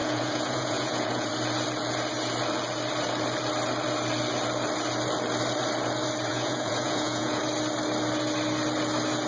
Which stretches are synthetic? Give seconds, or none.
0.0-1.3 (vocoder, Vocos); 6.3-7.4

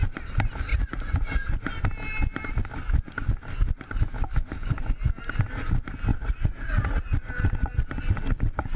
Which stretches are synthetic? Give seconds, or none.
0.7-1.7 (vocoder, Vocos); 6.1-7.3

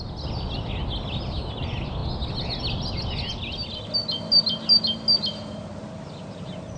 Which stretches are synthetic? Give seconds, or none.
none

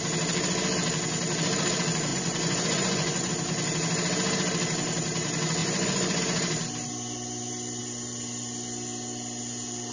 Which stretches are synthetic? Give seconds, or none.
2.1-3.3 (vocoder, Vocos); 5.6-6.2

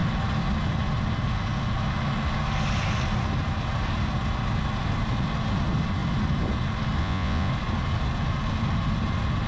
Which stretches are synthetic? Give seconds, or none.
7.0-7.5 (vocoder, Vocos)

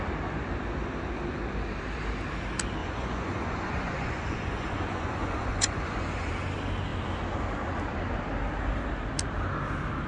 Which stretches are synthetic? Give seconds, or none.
2.8-6.3 (vocoder, Vocos)